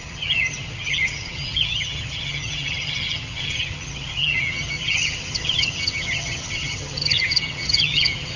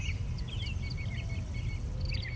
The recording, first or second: second